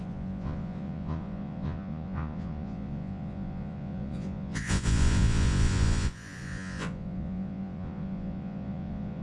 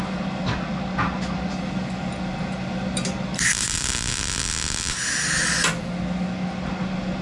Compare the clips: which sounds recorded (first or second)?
second